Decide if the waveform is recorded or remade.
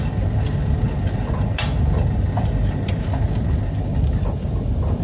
recorded